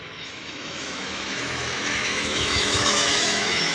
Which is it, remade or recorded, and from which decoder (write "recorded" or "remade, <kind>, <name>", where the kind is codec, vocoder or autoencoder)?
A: remade, autoencoder, DAC-VAE